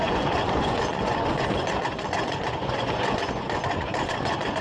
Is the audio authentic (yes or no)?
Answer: no